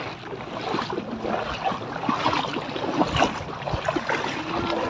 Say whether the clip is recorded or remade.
recorded